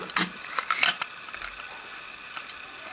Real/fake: real